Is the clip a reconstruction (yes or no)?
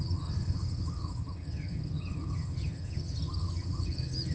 yes